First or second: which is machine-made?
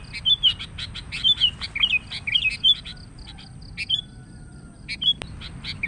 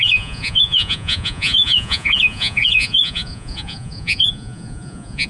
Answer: second